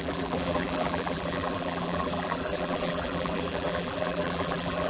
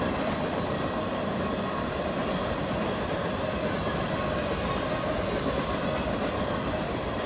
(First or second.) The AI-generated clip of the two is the first